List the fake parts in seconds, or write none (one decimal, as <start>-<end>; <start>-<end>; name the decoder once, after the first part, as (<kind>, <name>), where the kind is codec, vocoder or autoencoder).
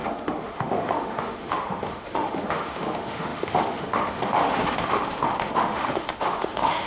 0.0-6.9 (autoencoder, DAC-VAE)